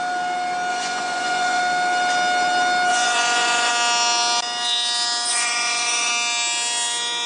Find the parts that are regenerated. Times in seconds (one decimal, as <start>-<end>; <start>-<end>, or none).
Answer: 0.7-1.6; 2.9-3.7; 5.3-6.1